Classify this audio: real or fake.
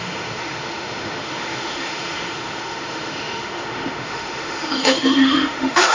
fake